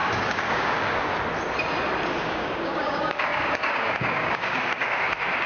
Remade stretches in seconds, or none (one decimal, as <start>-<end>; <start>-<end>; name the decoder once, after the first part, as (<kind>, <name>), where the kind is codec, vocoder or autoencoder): 0.0-1.1 (codec, DAC); 2.1-5.5